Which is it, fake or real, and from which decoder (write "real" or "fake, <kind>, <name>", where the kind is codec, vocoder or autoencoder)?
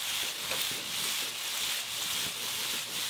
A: real